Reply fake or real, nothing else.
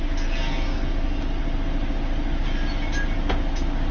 real